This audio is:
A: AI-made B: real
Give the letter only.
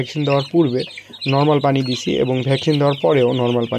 B